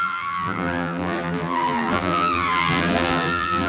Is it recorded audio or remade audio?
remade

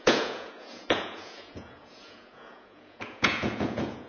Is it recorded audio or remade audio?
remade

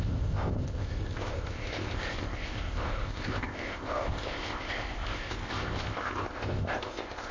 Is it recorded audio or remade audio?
remade